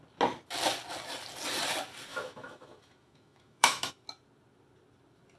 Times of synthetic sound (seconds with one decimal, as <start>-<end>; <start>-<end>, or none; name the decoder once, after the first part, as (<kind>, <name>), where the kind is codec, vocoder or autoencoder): 2.1-3.9 (autoencoder, DAC-VAE)